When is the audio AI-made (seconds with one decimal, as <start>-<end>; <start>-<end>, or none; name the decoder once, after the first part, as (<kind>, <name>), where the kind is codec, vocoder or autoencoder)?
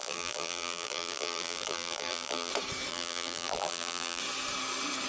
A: 0.0-2.5 (vocoder, BigVGAN v2); 2.9-4.2